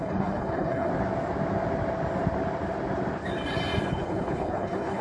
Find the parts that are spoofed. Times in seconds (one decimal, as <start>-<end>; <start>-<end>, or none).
0.0-0.9; 3.9-5.0